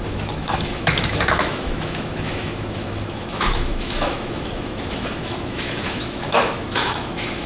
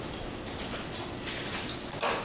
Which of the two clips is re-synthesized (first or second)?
first